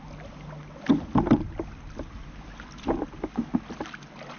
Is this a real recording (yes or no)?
yes